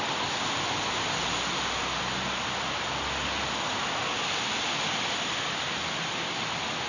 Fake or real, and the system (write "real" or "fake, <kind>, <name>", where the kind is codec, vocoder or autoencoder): real